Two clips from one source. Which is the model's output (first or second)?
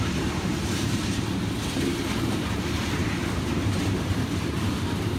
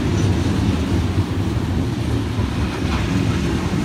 first